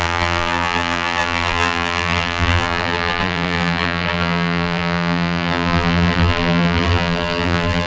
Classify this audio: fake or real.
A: fake